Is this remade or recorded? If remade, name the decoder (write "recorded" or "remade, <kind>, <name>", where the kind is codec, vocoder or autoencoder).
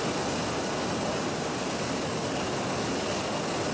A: recorded